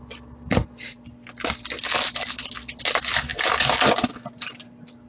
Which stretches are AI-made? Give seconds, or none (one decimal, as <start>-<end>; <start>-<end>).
none